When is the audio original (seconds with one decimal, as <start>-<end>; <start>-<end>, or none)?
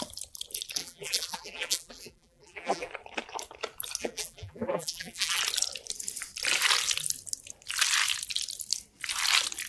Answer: 0.0-0.8; 2.9-4.0; 5.4-9.7